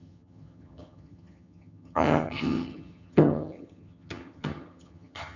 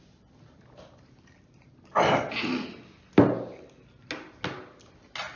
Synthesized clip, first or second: first